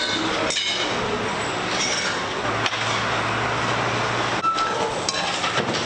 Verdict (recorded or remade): recorded